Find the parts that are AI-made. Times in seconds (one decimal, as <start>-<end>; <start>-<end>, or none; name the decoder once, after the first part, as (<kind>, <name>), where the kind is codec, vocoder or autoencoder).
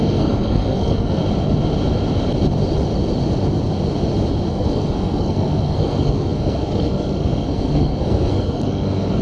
0.0-1.2 (codec, SNAC); 4.5-9.2